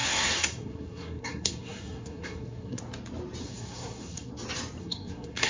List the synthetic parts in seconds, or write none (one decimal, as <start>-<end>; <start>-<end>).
0.0-2.8; 3.4-4.3; 4.8-5.5